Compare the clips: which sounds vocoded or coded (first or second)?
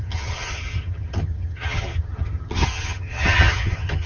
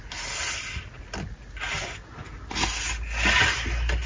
first